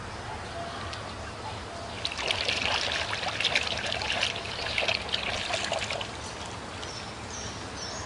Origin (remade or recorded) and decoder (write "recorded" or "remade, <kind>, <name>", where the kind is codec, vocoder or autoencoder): recorded